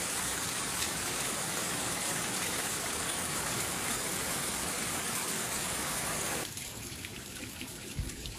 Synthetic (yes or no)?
yes